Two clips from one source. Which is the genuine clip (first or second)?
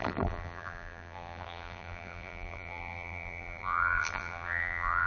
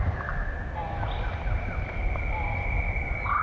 second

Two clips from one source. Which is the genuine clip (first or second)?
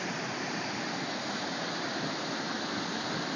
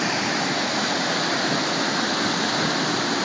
second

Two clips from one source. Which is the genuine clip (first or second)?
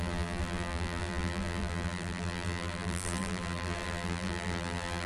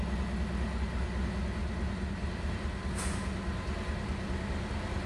second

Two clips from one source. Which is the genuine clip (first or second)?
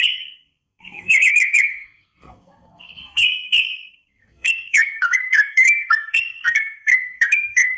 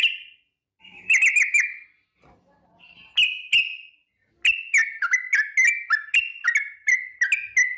second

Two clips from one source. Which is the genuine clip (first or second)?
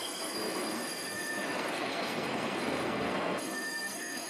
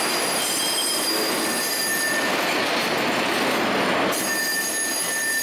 second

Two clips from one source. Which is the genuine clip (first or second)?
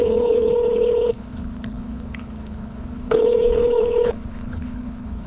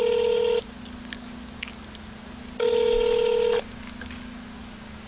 second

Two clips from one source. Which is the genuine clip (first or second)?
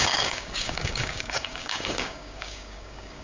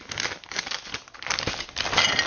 second